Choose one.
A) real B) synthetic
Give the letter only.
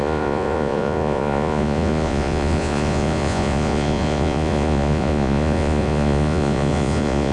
B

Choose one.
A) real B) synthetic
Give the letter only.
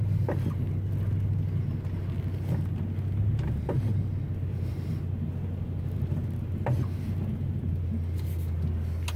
A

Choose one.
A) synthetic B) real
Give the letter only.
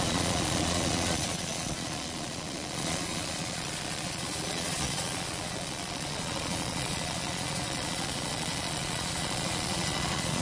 A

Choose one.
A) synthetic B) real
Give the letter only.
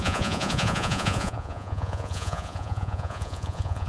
A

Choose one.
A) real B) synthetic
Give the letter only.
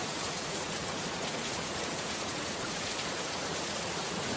B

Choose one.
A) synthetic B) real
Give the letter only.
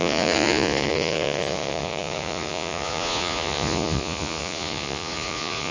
A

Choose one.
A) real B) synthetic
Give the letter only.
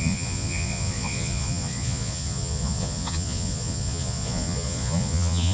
B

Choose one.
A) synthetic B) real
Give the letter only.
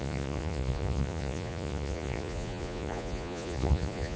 A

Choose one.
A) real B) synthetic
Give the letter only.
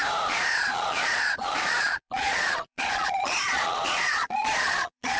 B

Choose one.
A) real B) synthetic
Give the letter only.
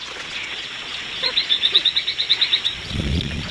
B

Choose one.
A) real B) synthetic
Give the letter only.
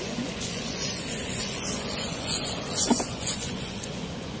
B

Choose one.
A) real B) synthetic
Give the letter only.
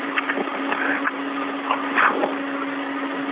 A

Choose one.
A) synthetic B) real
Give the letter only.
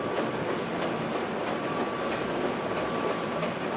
B